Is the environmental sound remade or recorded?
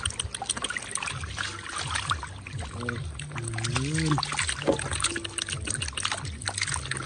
recorded